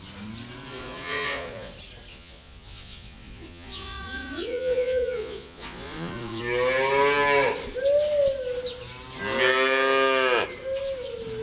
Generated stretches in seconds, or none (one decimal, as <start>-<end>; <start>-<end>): 0.7-1.7; 2.1-6.4